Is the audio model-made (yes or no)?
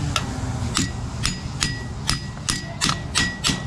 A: no